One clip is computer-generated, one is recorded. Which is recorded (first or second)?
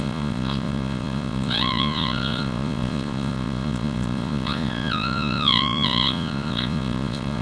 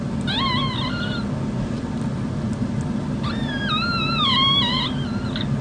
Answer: second